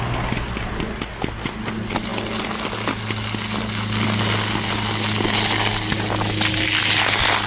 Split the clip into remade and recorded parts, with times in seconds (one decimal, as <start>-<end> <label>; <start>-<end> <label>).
0.0-7.5 recorded